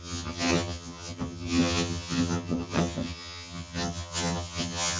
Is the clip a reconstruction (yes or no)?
yes